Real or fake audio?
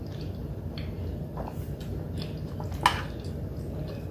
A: real